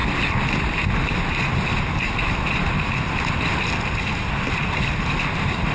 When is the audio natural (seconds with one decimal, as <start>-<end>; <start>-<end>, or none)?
0.0-5.7